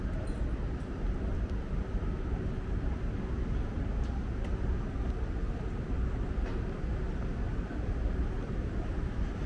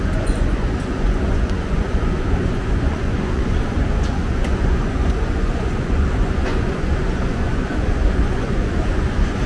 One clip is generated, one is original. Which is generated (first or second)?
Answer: second